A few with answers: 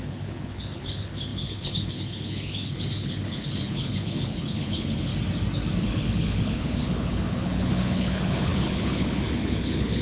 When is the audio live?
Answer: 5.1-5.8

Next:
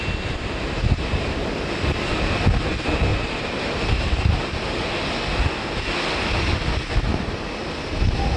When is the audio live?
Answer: 0.0-3.1; 4.9-8.4

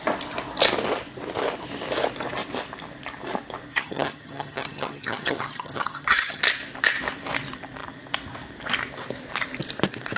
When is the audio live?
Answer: 0.0-3.7; 6.4-10.2

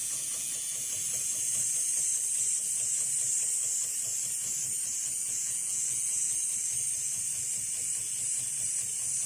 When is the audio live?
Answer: 0.9-5.2; 6.3-9.3

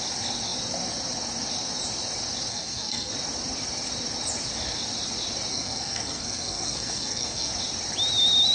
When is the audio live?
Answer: 0.0-2.5; 3.1-5.5; 7.5-8.5